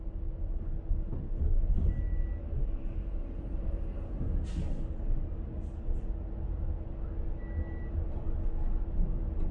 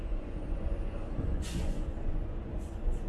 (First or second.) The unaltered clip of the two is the first